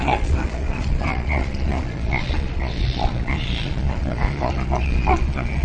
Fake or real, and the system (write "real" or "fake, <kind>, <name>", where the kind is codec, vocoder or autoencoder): fake, vocoder, Vocos